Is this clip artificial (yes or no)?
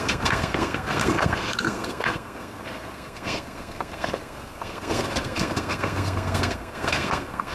yes